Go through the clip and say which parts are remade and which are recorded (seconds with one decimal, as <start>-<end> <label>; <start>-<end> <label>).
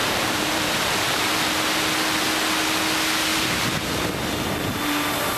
0.0-1.3 remade; 1.3-3.3 recorded; 3.3-5.4 remade